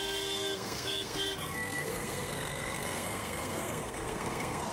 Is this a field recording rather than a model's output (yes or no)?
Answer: no